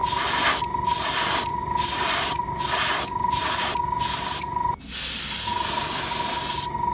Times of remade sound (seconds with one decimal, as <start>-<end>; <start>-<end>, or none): 1.5-4.8

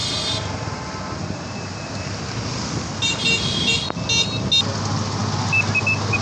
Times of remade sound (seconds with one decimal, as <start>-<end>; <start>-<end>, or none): none